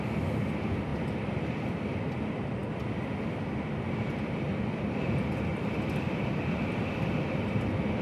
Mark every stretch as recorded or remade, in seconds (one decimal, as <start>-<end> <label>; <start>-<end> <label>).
0.0-0.9 recorded; 0.9-1.7 remade; 1.7-5.5 recorded; 5.5-7.1 remade; 7.1-8.0 recorded